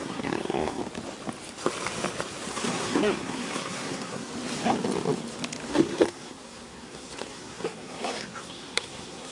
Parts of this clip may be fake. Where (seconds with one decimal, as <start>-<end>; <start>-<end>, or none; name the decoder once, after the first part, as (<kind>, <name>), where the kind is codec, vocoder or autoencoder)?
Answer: 0.0-0.8 (codec, SNAC); 2.5-4.3; 5.7-9.3